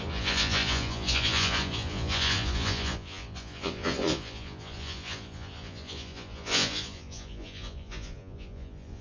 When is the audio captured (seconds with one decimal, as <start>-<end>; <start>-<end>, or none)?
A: none